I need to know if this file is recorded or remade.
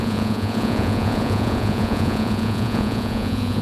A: remade